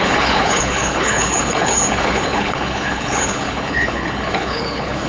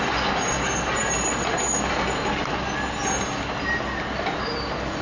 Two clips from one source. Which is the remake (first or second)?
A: first